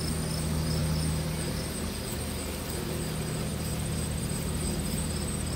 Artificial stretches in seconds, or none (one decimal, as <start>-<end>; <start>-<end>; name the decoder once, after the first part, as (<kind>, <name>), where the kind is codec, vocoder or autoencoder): none